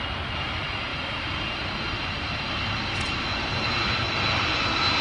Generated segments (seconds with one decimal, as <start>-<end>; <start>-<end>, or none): none